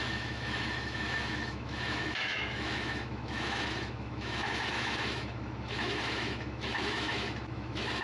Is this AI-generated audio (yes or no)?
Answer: yes